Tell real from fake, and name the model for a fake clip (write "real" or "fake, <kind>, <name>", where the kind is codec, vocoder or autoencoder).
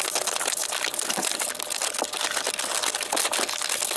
real